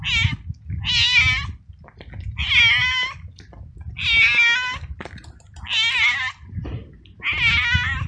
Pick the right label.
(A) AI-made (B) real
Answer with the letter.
B